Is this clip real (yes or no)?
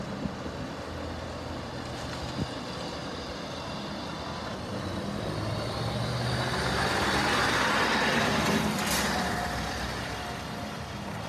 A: yes